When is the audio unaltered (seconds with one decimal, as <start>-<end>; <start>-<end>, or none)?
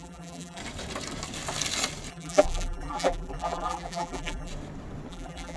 0.6-2.1; 4.5-5.1